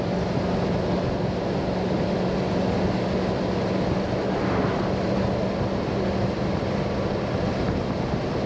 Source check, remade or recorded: recorded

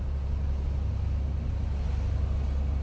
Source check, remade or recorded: recorded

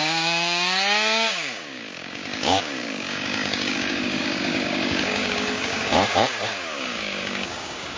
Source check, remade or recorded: remade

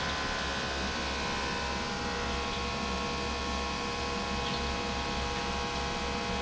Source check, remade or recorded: recorded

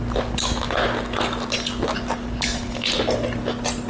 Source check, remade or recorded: recorded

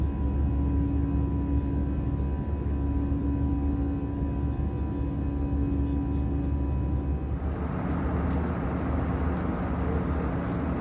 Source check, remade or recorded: recorded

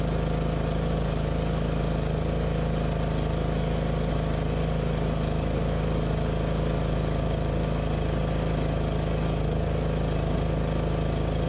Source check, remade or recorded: recorded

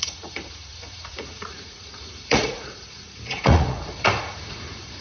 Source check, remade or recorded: remade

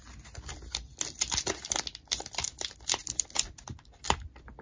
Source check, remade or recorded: recorded